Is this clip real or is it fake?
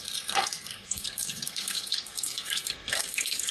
fake